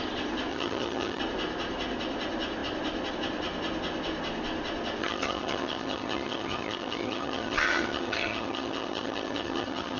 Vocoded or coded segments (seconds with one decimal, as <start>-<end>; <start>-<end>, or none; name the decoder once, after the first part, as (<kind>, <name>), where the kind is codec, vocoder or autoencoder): 0.5-1.2 (vocoder, HiFi-GAN); 5.0-10.0